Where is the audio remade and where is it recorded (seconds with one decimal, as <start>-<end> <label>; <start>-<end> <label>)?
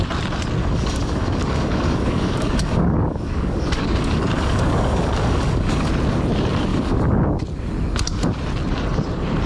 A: 0.0-0.6 recorded; 0.6-5.9 remade; 5.9-6.7 recorded; 6.7-7.4 remade; 7.4-9.5 recorded